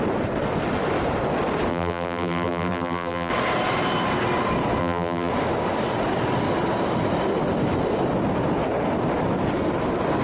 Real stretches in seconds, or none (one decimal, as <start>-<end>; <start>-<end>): 0.0-1.7; 3.3-4.8; 5.3-10.2